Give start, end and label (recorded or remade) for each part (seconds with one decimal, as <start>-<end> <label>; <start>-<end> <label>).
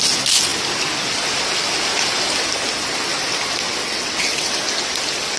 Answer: 0.0-3.8 recorded; 3.8-4.5 remade; 4.5-5.4 recorded